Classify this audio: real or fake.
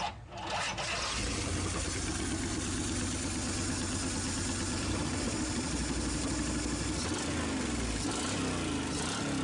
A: real